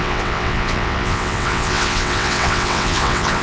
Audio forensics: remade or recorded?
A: remade